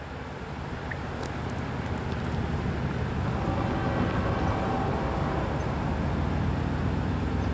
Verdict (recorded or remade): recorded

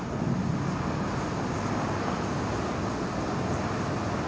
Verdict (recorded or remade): recorded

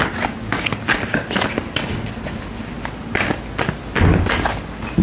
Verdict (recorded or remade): recorded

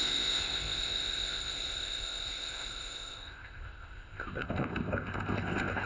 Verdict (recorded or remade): remade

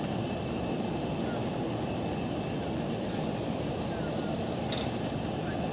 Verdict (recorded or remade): recorded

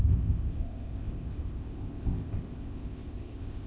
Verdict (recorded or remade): remade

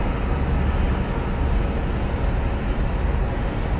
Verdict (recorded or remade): recorded